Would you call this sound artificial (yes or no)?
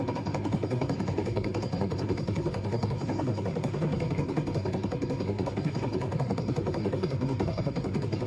yes